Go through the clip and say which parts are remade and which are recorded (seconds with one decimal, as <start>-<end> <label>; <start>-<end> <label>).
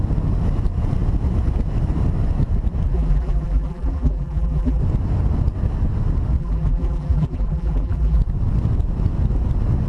0.0-2.9 recorded; 2.9-4.8 remade; 4.8-6.4 recorded; 6.4-8.2 remade; 8.2-9.9 recorded